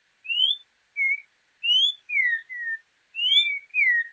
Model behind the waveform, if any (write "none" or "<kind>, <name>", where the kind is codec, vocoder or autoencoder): none